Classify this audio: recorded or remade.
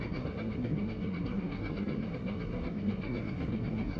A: remade